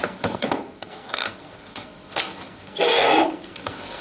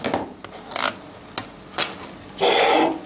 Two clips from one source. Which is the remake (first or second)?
first